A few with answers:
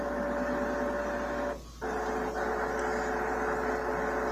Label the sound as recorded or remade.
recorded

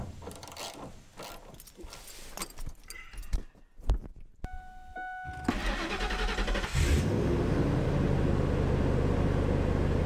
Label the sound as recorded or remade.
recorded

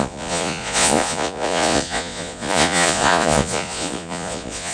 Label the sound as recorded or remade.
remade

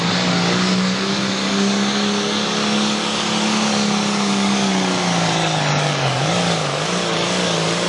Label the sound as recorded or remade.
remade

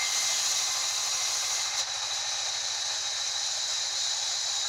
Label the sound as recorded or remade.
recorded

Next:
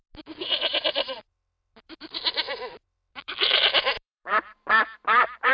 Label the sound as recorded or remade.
remade